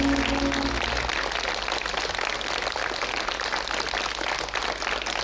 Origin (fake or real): real